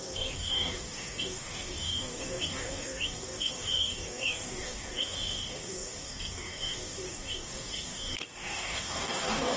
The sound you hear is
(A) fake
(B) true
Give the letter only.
A